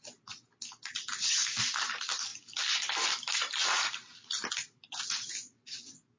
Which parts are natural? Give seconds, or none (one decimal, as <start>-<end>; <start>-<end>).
0.0-6.2